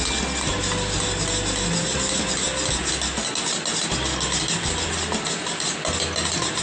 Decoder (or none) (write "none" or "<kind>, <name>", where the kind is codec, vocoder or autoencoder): none